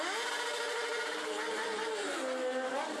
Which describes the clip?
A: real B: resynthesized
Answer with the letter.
A